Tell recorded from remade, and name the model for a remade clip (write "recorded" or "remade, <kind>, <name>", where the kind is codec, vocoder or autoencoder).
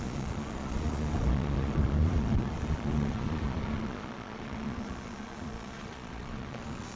remade, vocoder, Vocos